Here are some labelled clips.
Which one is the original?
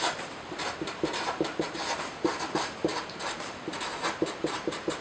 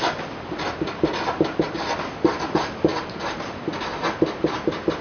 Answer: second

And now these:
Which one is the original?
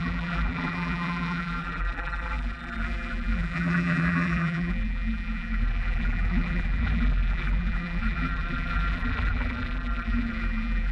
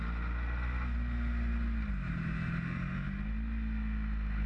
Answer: second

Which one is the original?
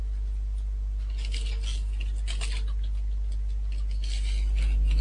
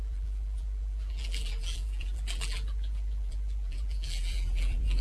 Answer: first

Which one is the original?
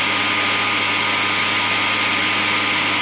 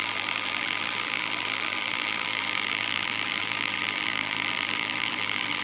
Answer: first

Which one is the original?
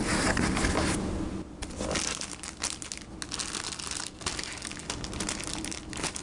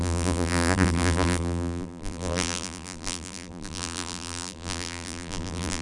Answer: first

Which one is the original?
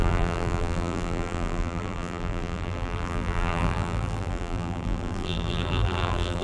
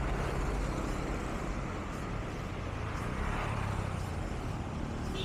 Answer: second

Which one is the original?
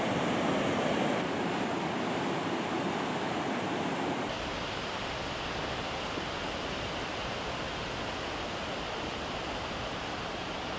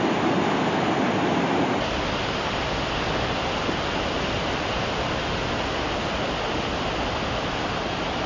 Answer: second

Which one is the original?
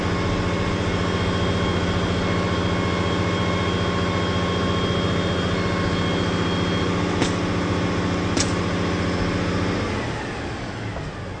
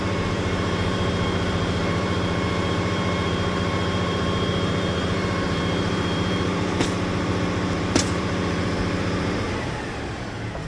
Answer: first